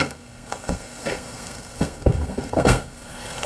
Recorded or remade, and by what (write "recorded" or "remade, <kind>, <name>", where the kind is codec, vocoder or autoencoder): remade, codec, SNAC